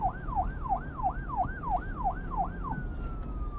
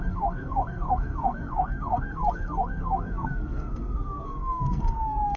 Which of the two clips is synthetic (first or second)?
second